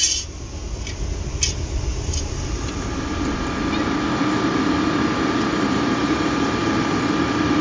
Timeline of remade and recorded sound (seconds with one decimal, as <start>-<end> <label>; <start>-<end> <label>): 0.0-1.9 recorded; 1.9-2.9 remade; 2.9-5.5 recorded; 5.5-7.1 remade; 7.1-7.6 recorded